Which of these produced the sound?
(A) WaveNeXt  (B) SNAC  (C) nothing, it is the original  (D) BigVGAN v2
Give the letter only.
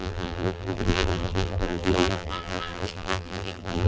D